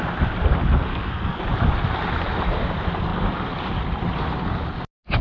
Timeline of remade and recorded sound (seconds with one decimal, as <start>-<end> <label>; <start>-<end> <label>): 0.0-0.9 recorded; 0.9-1.4 remade; 1.4-5.2 recorded